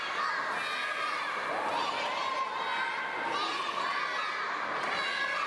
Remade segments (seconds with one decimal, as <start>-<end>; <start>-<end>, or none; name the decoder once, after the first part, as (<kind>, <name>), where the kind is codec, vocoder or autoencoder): none